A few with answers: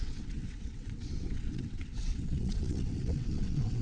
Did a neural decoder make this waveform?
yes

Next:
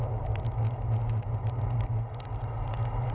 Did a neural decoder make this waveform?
no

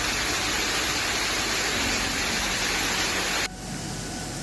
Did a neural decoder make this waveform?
no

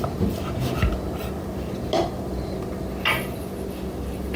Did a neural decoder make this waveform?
no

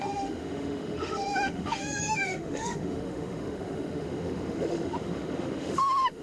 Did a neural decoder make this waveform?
yes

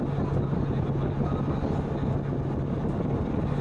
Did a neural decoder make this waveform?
no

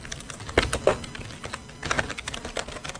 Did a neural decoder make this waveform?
no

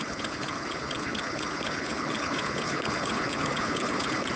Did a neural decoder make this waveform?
yes